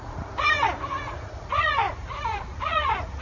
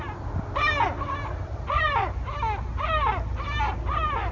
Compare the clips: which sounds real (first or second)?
second